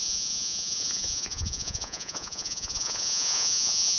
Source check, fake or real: fake